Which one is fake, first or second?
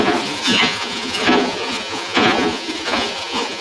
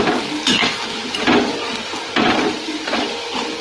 first